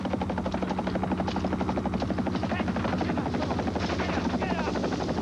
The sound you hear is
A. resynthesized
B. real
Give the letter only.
B